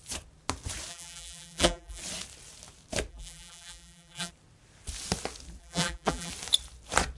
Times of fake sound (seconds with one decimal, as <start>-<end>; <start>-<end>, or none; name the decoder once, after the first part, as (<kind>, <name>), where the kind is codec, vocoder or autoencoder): 0.9-2.0 (vocoder, BigVGAN v2); 3.1-4.3; 5.6-6.3